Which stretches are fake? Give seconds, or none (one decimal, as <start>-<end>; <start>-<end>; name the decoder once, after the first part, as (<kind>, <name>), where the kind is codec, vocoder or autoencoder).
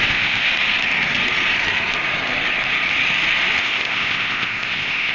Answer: 0.0-0.5 (codec, ZipCodec); 3.6-5.1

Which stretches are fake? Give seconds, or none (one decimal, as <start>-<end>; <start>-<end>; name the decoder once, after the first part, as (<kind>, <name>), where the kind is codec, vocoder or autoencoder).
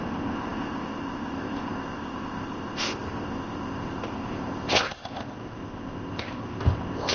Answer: 0.0-7.1 (codec, ZipCodec)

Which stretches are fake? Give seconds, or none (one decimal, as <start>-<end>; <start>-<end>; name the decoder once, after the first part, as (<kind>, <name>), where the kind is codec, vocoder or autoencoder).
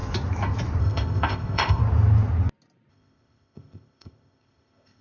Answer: 0.8-1.8 (codec, ZipCodec); 2.9-5.0